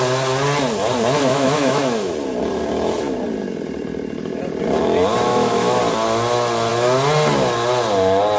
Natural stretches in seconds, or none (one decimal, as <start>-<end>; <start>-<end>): 0.0-1.2; 2.1-5.3; 5.8-8.4